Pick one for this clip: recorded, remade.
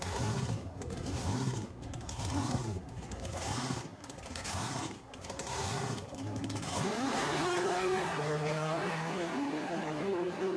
remade